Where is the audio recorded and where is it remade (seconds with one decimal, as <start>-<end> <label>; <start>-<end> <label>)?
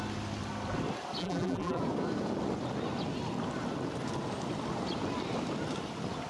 0.0-1.2 recorded; 1.2-1.8 remade; 1.8-6.3 recorded